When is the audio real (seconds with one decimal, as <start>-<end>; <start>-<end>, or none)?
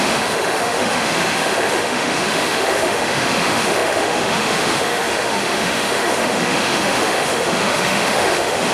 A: none